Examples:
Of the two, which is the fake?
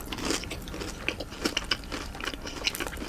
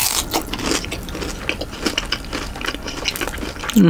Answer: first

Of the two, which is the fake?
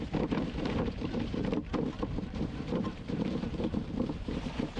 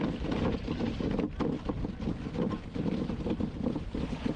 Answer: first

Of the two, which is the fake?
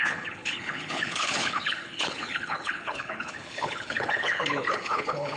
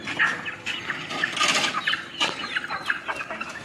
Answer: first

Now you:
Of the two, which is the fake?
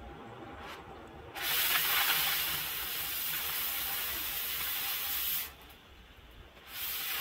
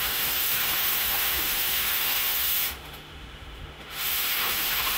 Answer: second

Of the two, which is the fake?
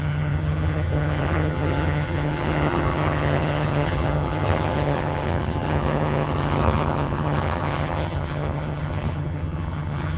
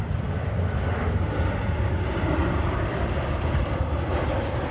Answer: first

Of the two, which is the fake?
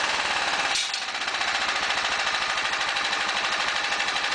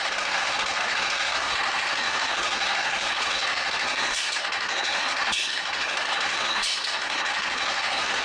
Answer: second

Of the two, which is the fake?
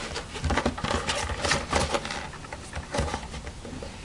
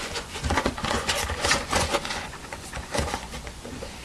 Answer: second